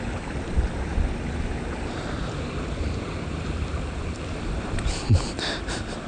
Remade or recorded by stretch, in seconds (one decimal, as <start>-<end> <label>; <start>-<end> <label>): 0.0-0.9 recorded; 0.9-4.2 remade; 4.2-6.1 recorded